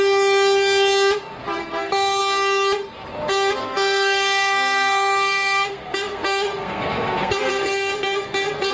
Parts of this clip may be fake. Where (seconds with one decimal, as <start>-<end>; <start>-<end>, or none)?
1.6-2.2; 3.6-8.7